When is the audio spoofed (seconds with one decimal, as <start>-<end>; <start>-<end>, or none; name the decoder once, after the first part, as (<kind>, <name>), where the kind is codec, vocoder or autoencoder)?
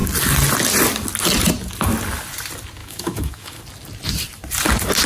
2.8-3.6 (autoencoder, DAC-VAE)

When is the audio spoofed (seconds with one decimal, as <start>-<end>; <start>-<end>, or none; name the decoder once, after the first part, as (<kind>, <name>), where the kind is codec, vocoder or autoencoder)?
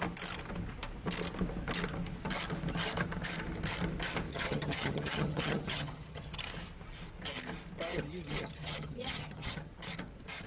4.3-6.4 (vocoder, HiFi-GAN); 7.9-9.7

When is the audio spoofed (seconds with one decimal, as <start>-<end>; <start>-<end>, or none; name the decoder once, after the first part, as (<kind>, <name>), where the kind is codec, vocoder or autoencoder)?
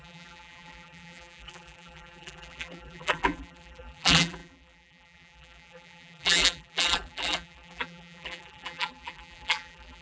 0.0-10.0 (vocoder, BigVGAN v2)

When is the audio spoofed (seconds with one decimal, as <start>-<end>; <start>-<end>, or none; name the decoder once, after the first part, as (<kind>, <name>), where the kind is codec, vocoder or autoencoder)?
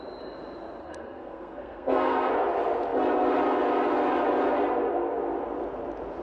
0.8-2.3 (codec, SNAC)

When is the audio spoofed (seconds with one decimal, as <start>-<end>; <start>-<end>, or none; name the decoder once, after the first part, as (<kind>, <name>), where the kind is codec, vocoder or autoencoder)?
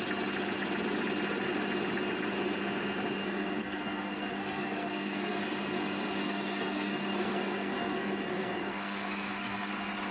3.2-5.4 (codec, SNAC); 6.2-9.7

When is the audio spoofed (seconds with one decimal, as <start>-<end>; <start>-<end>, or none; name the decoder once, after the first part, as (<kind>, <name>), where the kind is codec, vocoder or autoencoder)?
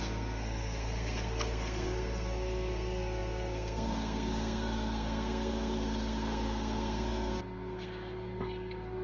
0.0-9.0 (codec, SNAC)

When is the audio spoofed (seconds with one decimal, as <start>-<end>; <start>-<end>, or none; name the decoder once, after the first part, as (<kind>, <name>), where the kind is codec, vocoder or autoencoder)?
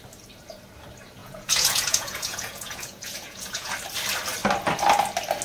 1.2-3.7 (vocoder, Vocos)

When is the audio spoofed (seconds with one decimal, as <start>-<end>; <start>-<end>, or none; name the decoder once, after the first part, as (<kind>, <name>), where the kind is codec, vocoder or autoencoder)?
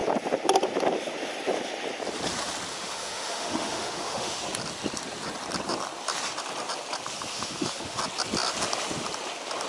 2.7-4.4 (autoencoder, DAC-VAE); 7.3-8.0